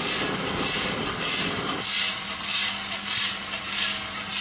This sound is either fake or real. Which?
real